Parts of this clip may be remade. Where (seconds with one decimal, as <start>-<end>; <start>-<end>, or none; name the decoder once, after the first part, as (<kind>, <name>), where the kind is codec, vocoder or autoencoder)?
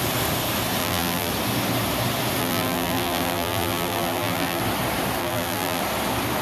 0.8-1.3 (vocoder, BigVGAN v2); 2.4-4.6; 5.2-5.8